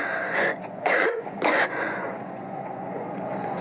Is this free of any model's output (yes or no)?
no